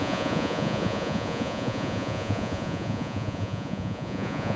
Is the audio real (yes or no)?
no